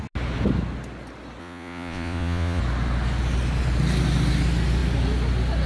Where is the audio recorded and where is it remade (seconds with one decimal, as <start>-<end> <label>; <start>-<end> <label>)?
0.0-1.4 recorded; 1.4-2.6 remade; 2.6-5.7 recorded